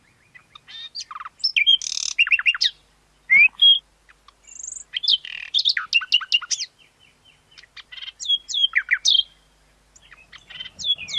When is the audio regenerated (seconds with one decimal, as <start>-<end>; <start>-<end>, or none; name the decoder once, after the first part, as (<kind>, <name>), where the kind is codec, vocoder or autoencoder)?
none